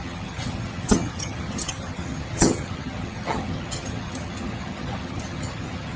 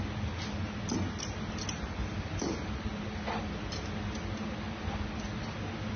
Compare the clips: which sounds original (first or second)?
second